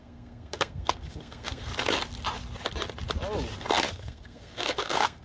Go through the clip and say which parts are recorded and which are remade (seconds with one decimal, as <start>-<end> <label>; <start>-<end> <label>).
0.0-1.7 remade; 1.7-3.9 recorded; 3.9-5.2 remade